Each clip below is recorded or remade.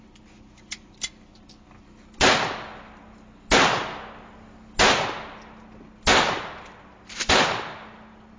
recorded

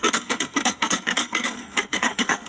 remade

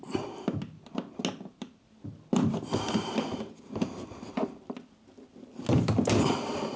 recorded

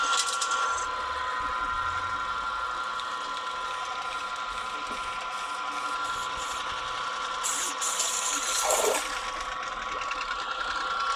recorded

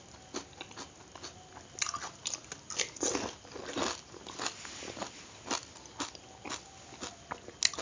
recorded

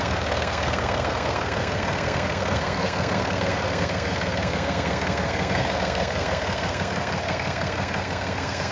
remade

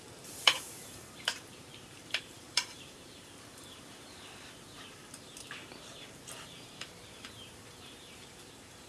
remade